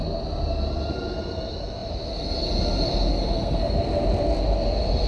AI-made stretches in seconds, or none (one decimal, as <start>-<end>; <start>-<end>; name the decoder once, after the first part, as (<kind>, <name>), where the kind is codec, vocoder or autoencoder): 3.1-3.6 (codec, SNAC)